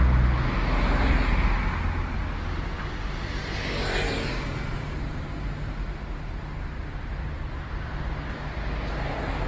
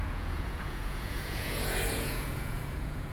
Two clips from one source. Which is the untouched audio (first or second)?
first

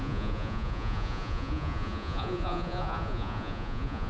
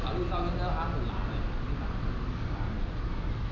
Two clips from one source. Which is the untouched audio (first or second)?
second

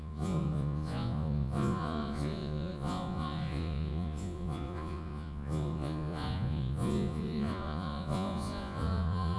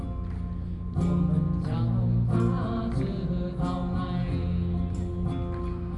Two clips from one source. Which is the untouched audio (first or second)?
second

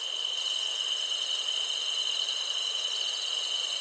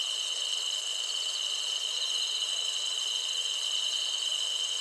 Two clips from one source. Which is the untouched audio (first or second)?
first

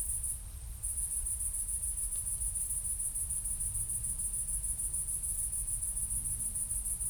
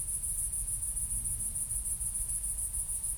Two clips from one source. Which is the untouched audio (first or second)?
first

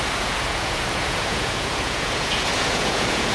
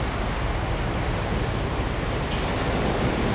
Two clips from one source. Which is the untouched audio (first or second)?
second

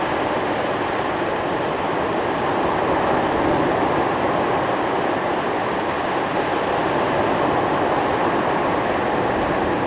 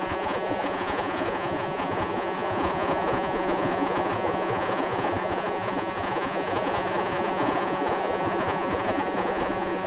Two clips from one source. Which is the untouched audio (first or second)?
first